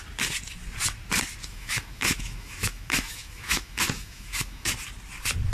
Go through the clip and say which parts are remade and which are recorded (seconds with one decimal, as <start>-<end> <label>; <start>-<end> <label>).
0.0-1.4 recorded; 1.4-4.7 remade; 4.7-5.5 recorded